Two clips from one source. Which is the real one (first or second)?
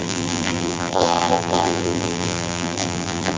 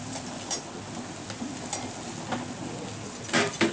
second